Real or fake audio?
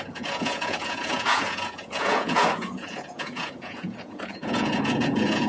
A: fake